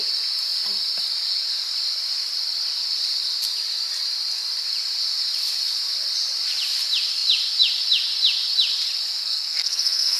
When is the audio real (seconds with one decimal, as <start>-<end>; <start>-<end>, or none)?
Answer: 0.0-9.2